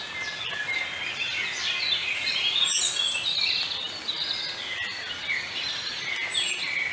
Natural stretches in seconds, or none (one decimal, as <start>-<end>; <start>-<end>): 0.0-2.0; 2.8-6.9